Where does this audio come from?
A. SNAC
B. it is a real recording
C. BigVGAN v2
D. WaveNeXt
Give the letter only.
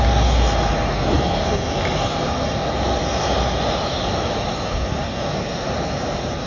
B